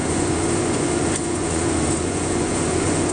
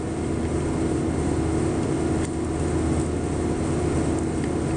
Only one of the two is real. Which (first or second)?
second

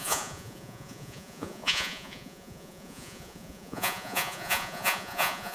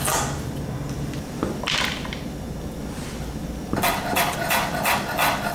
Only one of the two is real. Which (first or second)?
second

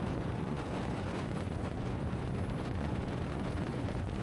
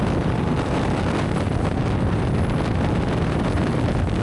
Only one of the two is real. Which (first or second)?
second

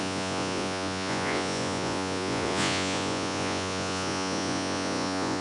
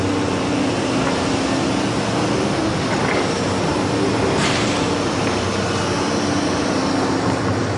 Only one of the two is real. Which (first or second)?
second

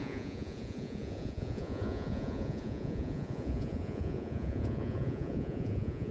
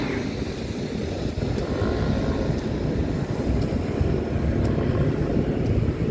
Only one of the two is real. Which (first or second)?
second